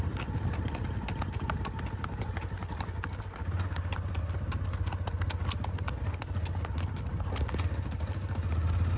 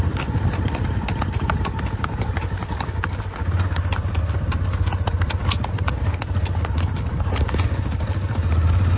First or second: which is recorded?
first